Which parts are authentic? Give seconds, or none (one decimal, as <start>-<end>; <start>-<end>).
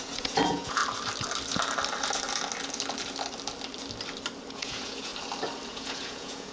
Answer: 0.8-4.5; 5.1-5.7